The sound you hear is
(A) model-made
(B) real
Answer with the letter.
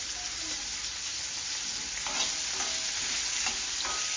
B